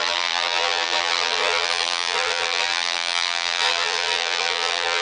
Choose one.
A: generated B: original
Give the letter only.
A